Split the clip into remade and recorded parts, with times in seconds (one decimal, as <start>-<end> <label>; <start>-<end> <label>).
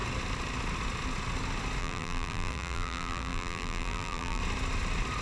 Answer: 0.0-1.8 recorded; 1.8-4.4 remade; 4.4-5.2 recorded